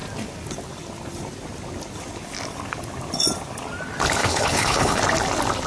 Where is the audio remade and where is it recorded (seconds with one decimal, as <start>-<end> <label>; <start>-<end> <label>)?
0.0-4.2 recorded; 4.2-5.0 remade; 5.0-5.7 recorded